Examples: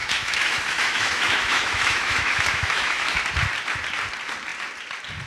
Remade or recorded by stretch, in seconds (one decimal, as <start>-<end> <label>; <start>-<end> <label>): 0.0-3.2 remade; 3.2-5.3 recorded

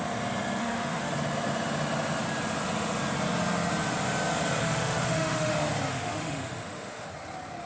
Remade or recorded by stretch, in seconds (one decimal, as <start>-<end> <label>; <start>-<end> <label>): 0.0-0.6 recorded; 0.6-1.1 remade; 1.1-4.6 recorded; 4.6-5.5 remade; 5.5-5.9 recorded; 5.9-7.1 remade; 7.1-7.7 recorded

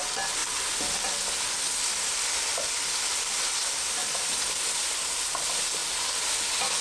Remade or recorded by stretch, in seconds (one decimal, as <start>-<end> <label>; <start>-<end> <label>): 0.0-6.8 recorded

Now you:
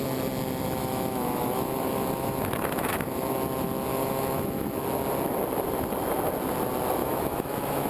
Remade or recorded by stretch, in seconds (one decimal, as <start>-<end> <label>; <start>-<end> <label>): 0.0-0.8 recorded; 0.8-3.2 remade; 3.2-3.9 recorded; 3.9-4.8 remade; 4.8-7.0 recorded; 7.0-7.9 remade

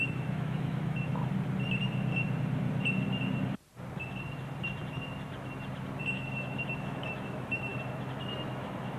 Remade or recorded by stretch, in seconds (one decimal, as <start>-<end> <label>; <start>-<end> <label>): 0.0-1.2 remade; 1.2-6.0 recorded; 6.0-7.7 remade; 7.7-8.3 recorded; 8.3-9.0 remade